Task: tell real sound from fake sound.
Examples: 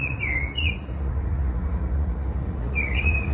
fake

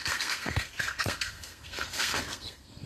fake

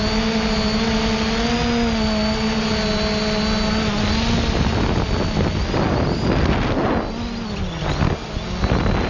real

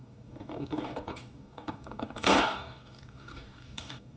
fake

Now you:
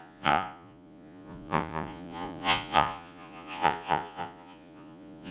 fake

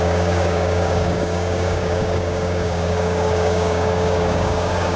fake